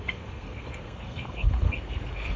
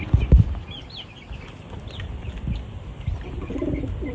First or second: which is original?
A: second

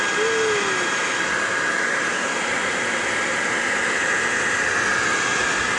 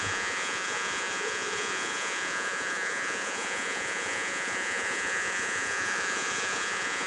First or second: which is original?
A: first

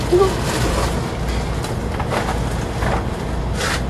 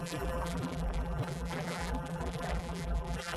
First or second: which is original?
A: first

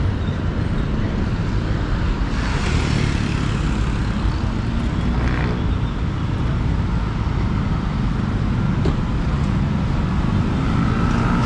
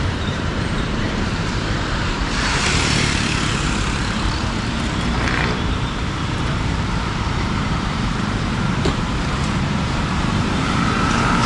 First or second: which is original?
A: first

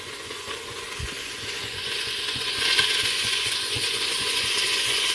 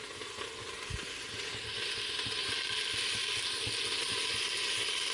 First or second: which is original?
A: second